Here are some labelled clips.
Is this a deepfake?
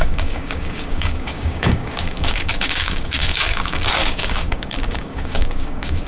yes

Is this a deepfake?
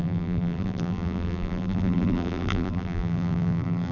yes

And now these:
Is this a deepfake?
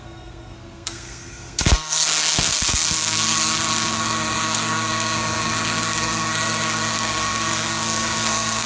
yes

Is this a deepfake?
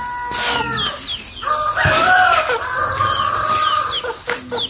no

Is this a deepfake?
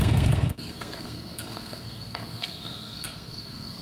yes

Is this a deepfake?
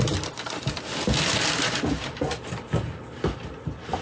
no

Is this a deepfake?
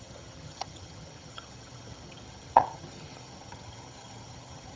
yes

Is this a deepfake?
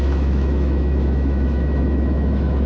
yes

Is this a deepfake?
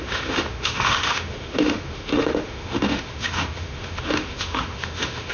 yes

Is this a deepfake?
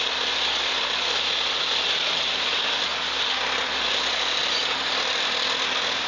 no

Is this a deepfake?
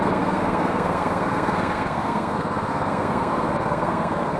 yes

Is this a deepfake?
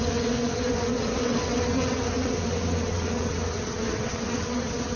yes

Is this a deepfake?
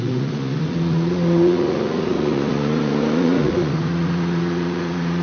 yes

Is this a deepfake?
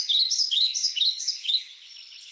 yes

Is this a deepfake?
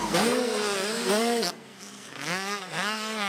yes